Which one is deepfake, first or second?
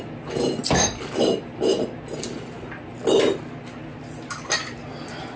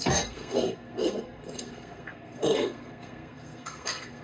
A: second